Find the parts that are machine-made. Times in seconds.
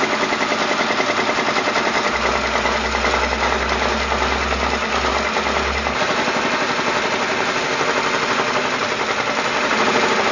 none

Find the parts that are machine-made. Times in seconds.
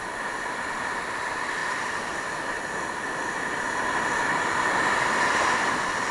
none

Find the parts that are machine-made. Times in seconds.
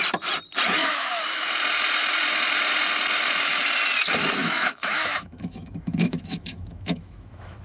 0.8-1.5 (autoencoder, DAC-VAE); 4.4-7.6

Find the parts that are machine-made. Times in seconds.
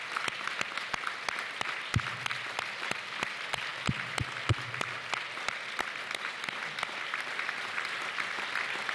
none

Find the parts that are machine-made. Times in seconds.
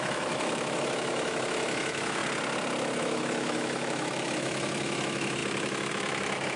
0.0-2.2 (autoencoder, DAC-VAE); 3.0-6.6